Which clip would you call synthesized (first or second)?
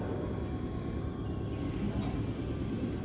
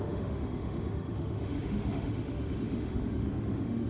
second